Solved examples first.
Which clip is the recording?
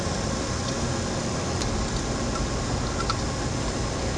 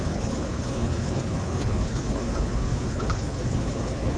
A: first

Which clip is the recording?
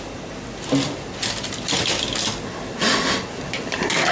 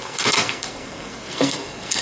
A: first